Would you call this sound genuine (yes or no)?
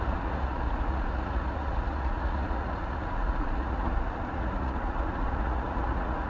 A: no